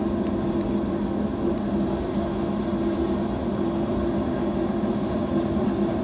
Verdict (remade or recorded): recorded